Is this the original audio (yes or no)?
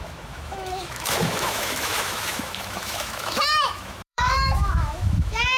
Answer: no